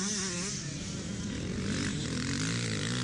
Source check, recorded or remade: recorded